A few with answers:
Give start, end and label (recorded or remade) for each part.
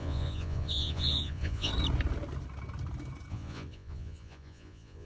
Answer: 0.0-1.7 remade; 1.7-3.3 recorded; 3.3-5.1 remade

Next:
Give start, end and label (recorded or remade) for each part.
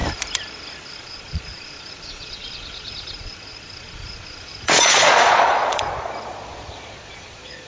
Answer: 0.0-1.0 recorded; 1.0-7.7 remade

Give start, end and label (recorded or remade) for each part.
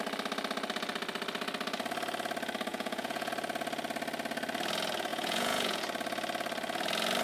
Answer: 0.0-2.7 recorded; 2.7-3.3 remade; 3.3-5.1 recorded; 5.1-5.8 remade; 5.8-7.2 recorded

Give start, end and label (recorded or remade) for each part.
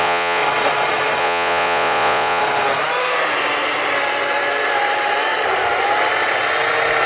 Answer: 0.0-0.4 remade; 0.4-1.2 recorded; 1.2-2.4 remade; 2.4-7.1 recorded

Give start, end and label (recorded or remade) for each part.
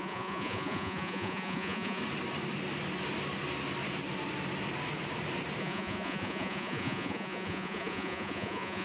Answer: 0.0-2.0 remade; 2.0-5.6 recorded; 5.6-8.8 remade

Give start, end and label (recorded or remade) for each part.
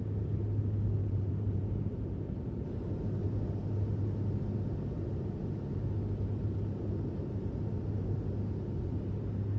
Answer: 0.0-1.0 recorded; 1.0-1.8 remade; 1.8-9.6 recorded